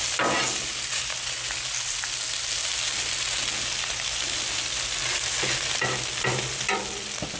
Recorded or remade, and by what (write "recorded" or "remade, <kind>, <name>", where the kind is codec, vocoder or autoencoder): recorded